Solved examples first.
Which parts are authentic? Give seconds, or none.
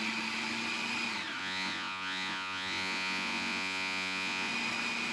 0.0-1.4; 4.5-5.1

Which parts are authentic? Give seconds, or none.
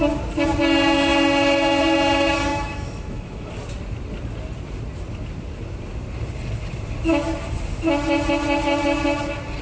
0.0-2.5; 3.5-9.6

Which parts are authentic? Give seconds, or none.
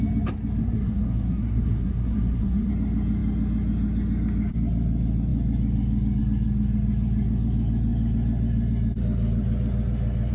0.0-0.6; 2.7-10.3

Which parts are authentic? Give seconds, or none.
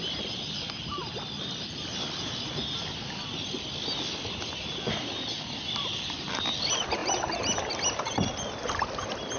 0.0-9.4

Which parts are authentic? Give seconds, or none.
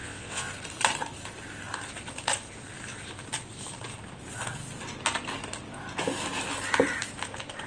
0.5-7.7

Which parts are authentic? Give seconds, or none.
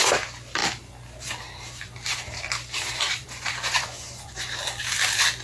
0.0-3.2; 4.3-5.4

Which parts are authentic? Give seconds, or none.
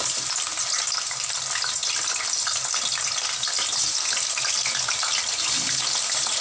0.0-6.4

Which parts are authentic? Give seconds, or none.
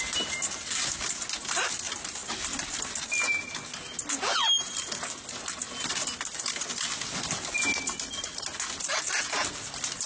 0.0-10.1